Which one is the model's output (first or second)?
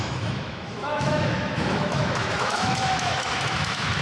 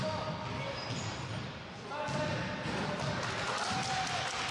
first